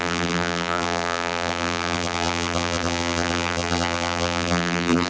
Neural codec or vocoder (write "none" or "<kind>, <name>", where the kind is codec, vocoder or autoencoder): vocoder, BigVGAN v2